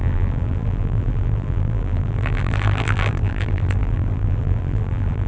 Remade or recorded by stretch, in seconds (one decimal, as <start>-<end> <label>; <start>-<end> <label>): 0.0-5.3 remade

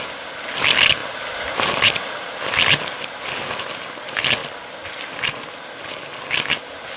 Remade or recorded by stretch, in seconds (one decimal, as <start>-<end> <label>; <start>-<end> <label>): 0.0-7.0 recorded

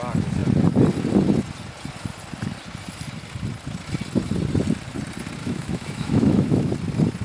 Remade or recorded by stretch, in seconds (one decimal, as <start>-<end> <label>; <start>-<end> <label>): 0.0-5.4 recorded; 5.4-6.7 remade; 6.7-7.2 recorded

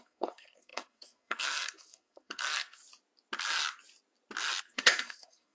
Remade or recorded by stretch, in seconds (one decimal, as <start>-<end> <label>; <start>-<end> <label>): 0.0-2.8 remade; 2.8-4.6 recorded; 4.6-5.5 remade

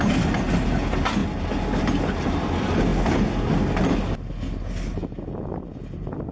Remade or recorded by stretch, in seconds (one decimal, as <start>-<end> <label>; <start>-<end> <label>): 0.0-6.3 recorded

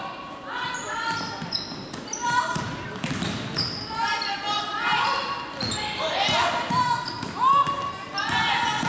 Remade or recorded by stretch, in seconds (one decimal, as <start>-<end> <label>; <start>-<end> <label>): 0.0-2.2 recorded; 2.2-2.9 remade; 2.9-8.9 recorded